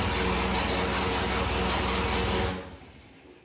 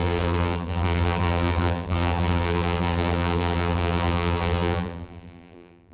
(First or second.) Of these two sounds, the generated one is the second